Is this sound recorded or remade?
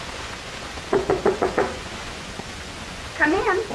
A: remade